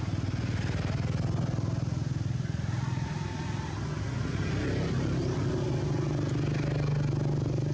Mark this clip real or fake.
real